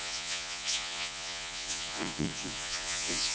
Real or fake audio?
fake